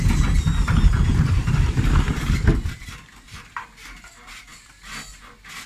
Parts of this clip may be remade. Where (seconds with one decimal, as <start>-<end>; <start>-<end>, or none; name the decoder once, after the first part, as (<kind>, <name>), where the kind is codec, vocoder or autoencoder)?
1.4-4.1 (vocoder, BigVGAN v2)